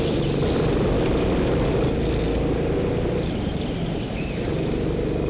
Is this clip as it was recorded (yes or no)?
yes